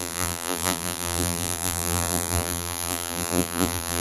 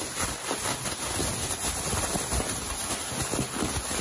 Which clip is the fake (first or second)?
first